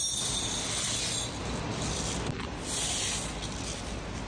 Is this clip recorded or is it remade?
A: recorded